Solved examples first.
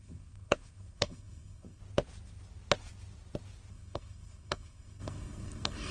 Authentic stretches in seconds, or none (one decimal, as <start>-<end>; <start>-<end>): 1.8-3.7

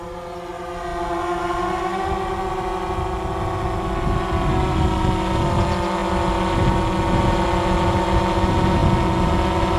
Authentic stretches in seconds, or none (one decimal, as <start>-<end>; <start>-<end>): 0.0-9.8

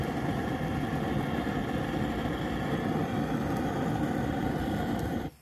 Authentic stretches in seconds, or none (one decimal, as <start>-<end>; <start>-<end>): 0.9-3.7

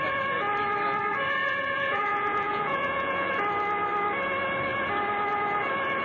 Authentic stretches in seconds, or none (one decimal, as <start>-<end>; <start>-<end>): 0.0-1.4; 3.3-6.0

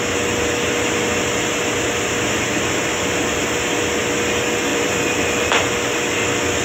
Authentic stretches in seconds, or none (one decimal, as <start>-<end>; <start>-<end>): 0.0-4.7; 5.5-6.6